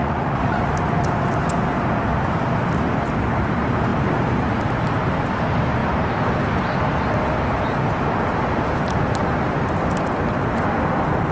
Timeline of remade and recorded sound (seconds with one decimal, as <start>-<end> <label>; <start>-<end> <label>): 0.0-0.7 remade; 0.7-11.3 recorded